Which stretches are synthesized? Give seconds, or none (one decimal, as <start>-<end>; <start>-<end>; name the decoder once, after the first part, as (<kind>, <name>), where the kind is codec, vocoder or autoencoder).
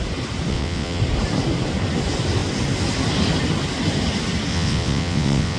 0.5-1.0 (vocoder, WaveNeXt); 4.5-5.6